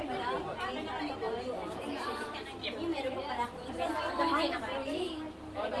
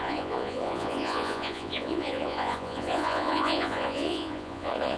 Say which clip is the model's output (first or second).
second